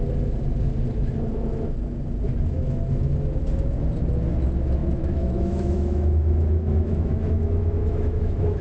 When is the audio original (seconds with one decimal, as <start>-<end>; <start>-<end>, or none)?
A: 0.0-4.8

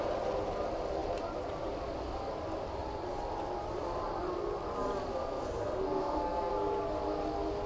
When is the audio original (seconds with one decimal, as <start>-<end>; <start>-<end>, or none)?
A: 0.0-5.1; 6.5-7.7